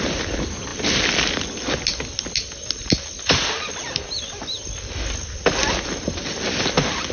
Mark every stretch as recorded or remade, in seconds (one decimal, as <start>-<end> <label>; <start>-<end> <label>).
0.0-7.1 recorded

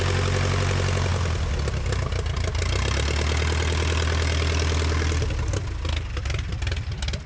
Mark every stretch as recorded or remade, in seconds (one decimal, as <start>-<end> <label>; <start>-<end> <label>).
0.0-7.3 recorded

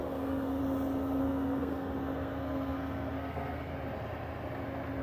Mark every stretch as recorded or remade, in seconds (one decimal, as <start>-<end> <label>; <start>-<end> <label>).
0.0-0.6 remade; 0.6-1.2 recorded; 1.2-3.7 remade; 3.7-5.0 recorded

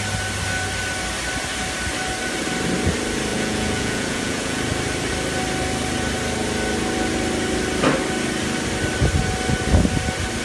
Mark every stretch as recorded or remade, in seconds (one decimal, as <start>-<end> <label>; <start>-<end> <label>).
0.0-3.3 recorded; 3.3-4.6 remade; 4.6-10.4 recorded